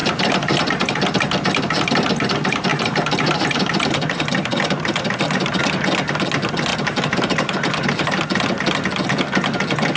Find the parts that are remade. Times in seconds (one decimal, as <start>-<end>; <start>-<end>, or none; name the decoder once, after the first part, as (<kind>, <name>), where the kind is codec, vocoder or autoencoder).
0.0-0.7 (vocoder, BigVGAN v2); 2.7-5.6; 6.7-8.2